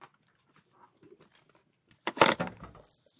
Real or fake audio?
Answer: real